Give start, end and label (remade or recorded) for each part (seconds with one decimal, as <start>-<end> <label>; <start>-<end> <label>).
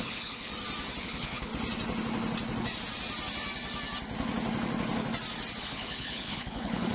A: 0.0-0.5 remade; 0.5-1.0 recorded; 1.0-1.5 remade; 1.5-5.6 recorded; 5.6-6.9 remade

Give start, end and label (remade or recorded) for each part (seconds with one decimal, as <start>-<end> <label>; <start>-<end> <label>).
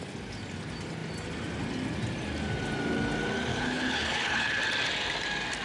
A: 0.0-3.5 recorded; 3.5-4.6 remade; 4.6-5.6 recorded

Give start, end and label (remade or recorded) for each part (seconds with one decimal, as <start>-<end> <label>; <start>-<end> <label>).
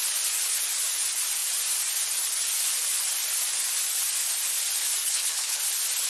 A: 0.0-5.0 recorded; 5.0-5.6 remade; 5.6-6.1 recorded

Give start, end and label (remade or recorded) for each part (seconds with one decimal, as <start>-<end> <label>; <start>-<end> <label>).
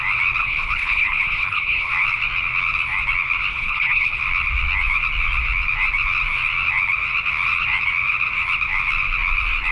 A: 0.0-0.4 recorded; 0.4-1.9 remade; 1.9-3.5 recorded; 3.5-4.2 remade; 4.2-9.7 recorded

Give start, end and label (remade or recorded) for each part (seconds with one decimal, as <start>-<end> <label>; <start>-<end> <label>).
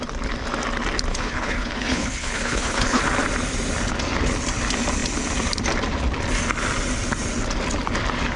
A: 0.0-1.1 recorded; 1.1-3.0 remade; 3.0-8.4 recorded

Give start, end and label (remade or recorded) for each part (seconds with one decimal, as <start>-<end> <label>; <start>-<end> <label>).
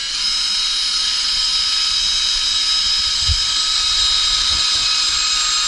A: 0.0-5.7 recorded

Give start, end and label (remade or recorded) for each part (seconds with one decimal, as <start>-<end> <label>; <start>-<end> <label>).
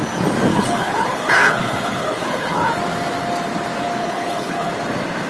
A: 0.0-0.5 recorded; 0.5-2.7 remade; 2.7-4.0 recorded; 4.0-4.7 remade; 4.7-5.3 recorded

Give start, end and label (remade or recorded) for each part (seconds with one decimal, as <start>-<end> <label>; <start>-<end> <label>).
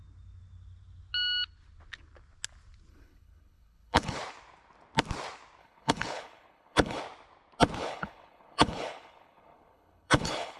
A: 0.0-2.9 recorded; 2.9-4.2 remade; 4.2-5.6 recorded; 5.6-7.0 remade; 7.0-7.8 recorded; 7.8-10.6 remade